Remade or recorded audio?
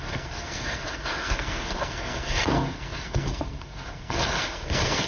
remade